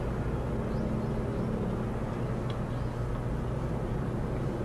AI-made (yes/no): no